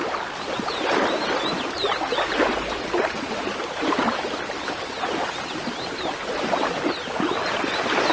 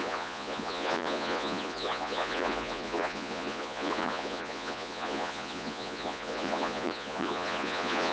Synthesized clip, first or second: second